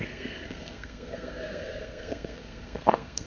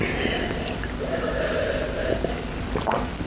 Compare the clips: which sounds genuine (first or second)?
second